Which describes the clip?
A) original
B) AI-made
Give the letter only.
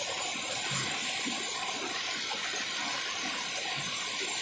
A